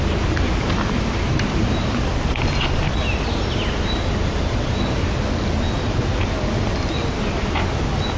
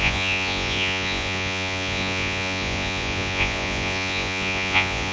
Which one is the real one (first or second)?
first